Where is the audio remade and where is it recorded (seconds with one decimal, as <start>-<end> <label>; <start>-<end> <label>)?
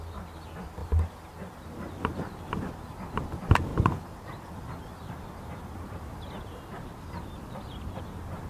0.0-3.7 recorded; 3.7-8.0 remade; 8.0-8.5 recorded